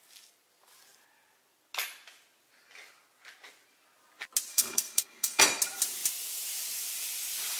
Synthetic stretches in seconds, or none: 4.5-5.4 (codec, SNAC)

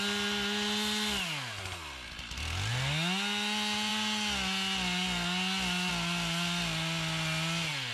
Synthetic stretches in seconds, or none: none

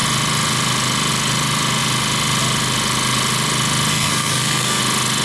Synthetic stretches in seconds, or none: 3.9-4.8 (codec, SNAC)

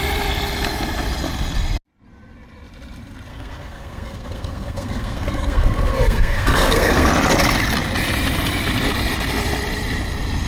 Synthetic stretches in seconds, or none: 3.3-7.1 (codec, SNAC)

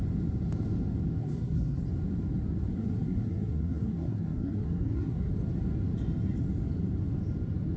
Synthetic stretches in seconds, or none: 1.2-1.8 (codec, SNAC); 2.7-5.3